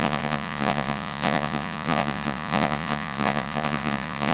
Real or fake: fake